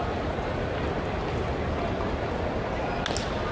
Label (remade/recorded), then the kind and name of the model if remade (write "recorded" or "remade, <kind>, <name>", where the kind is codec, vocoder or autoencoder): recorded